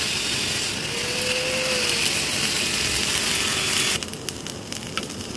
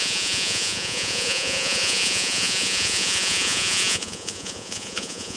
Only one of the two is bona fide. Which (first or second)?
first